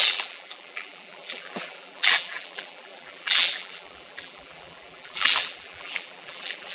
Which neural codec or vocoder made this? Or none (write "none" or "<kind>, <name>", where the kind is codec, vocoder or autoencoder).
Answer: vocoder, BigVGAN v2